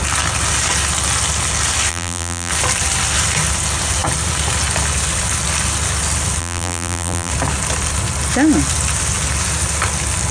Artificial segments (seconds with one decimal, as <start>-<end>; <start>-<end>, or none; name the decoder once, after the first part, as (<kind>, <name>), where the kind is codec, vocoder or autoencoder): 1.9-2.5 (vocoder, BigVGAN v2); 6.4-7.3